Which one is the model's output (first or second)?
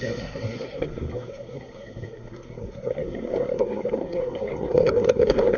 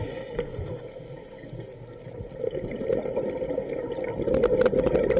first